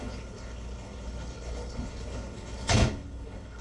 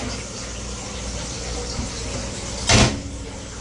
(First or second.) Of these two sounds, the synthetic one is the first